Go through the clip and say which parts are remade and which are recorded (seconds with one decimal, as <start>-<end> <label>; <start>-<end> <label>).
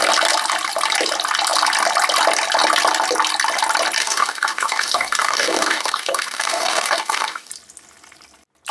0.0-4.0 recorded; 4.0-7.5 remade; 7.5-8.7 recorded